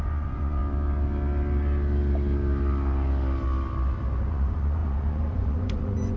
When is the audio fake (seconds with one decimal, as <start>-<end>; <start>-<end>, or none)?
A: 0.0-0.6; 4.3-6.2